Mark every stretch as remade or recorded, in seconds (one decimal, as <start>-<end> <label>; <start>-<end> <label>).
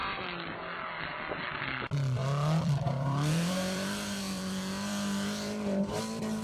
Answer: 0.0-2.2 recorded; 2.2-6.0 remade; 6.0-6.4 recorded